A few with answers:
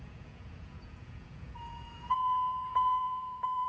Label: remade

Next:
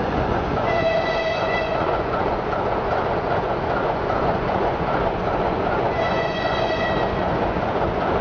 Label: remade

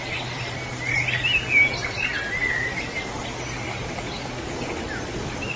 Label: recorded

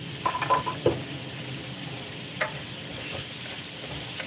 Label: recorded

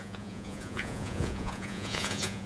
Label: remade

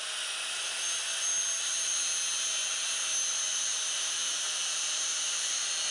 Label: recorded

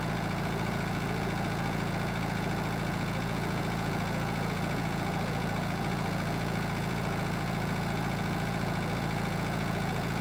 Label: remade